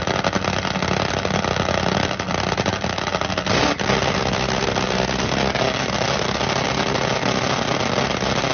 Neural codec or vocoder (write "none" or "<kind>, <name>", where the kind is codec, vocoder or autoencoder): none